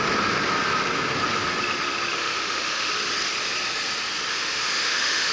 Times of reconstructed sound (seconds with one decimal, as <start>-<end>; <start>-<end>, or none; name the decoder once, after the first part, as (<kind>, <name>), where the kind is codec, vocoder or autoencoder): 2.2-2.9 (autoencoder, DAC-VAE); 4.3-5.3